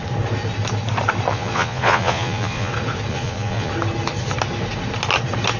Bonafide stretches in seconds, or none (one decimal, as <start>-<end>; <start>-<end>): 0.0-1.3; 2.7-3.1; 3.7-5.6